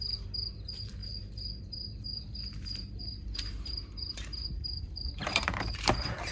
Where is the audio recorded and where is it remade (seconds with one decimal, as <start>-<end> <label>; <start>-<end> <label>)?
0.0-6.3 remade

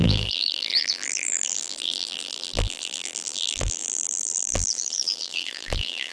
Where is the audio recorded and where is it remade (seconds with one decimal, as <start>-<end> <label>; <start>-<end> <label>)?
0.0-6.1 remade